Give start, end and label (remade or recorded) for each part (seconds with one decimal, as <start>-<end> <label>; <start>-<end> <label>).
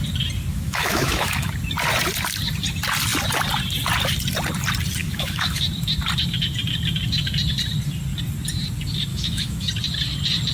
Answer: 0.0-0.5 recorded; 0.5-1.5 remade; 1.5-5.0 recorded; 5.0-5.6 remade; 5.6-9.1 recorded; 9.1-9.7 remade; 9.7-10.5 recorded